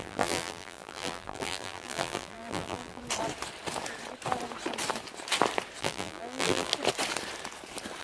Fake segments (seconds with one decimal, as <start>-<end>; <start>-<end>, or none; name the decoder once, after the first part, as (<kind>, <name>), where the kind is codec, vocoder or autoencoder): 0.0-3.0 (vocoder, BigVGAN v2); 5.8-6.7